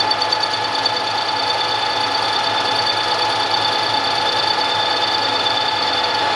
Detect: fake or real real